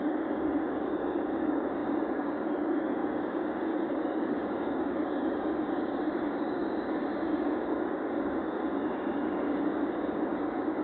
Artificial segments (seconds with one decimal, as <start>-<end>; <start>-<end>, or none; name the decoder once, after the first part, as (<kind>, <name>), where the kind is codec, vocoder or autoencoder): 0.0-10.8 (codec, DAC)